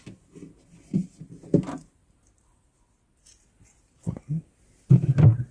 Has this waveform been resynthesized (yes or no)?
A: no